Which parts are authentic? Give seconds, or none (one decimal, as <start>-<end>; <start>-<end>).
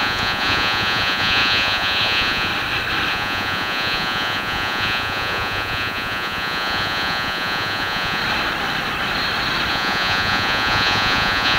2.5-3.1; 8.2-9.7